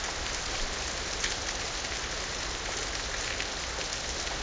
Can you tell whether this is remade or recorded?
recorded